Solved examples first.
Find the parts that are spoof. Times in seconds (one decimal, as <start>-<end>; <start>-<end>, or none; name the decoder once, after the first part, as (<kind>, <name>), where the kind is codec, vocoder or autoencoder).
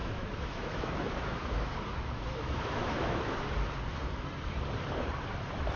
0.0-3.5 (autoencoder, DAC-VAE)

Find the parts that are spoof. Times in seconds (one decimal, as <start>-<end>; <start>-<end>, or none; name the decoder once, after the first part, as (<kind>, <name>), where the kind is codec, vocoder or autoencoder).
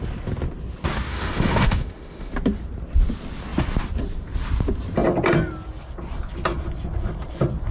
1.1-2.3 (autoencoder, DAC-VAE)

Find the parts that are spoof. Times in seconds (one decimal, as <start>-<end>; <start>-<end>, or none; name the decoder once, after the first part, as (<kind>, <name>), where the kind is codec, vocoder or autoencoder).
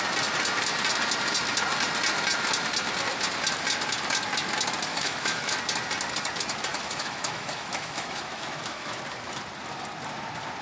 4.9-5.6 (autoencoder, DAC-VAE); 6.7-9.0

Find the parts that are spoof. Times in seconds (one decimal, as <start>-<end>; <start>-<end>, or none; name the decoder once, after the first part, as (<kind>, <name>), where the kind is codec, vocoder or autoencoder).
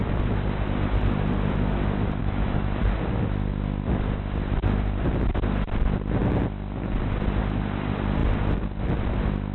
2.2-2.8 (autoencoder, DAC-VAE)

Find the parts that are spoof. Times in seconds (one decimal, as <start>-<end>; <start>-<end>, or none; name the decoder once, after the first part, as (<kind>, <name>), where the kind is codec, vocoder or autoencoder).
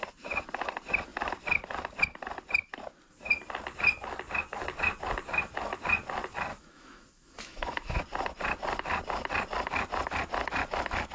6.5-8.0 (autoencoder, DAC-VAE)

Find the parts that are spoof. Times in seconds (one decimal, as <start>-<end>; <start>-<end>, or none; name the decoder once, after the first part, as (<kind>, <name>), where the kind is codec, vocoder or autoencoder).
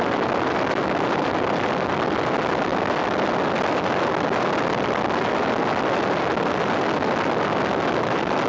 none